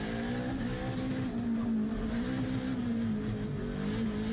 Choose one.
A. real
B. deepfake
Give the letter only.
A